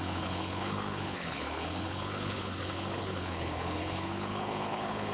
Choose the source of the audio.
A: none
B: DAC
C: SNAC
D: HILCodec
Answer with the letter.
D